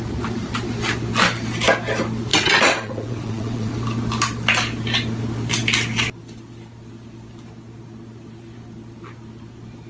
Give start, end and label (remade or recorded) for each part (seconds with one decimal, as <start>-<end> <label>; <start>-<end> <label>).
0.0-2.3 recorded; 2.3-3.7 remade; 3.7-9.9 recorded